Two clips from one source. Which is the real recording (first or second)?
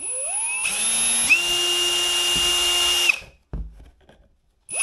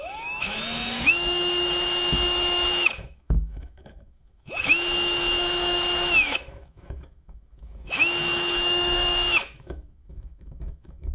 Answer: first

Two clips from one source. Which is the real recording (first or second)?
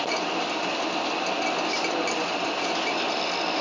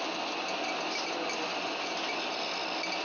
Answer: second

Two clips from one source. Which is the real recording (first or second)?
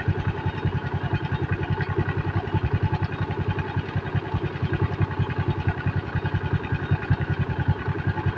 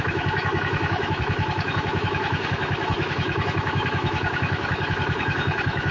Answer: first